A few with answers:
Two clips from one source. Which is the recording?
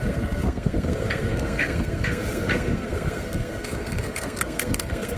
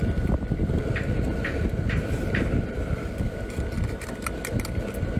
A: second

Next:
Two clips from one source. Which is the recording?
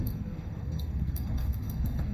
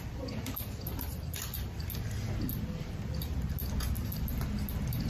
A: second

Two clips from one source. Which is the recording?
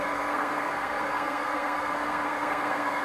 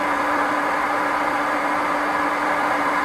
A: second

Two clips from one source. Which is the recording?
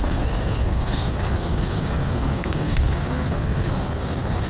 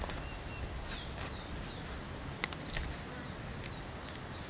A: second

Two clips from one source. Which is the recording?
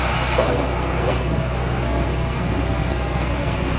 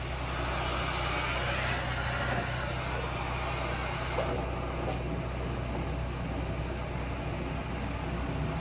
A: second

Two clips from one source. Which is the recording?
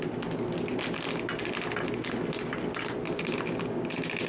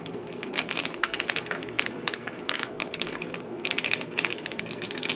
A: first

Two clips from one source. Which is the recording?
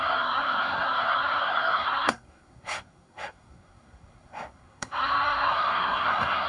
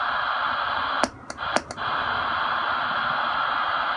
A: second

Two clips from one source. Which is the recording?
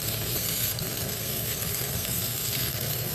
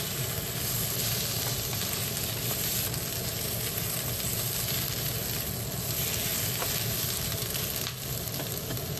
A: second